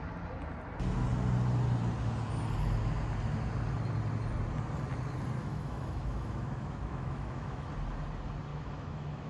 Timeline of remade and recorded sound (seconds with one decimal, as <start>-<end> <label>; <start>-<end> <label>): 0.0-5.4 recorded; 5.4-7.7 remade; 7.7-8.5 recorded; 8.5-9.3 remade